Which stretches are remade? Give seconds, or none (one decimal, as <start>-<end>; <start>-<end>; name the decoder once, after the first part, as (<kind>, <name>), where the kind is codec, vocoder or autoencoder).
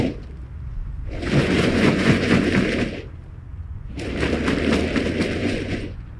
0.7-2.5 (vocoder, Vocos); 3.5-4.1; 5.4-6.2